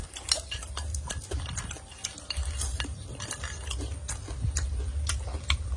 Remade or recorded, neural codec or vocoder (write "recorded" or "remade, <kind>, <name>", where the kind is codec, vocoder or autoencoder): recorded